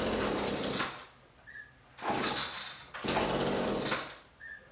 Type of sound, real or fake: real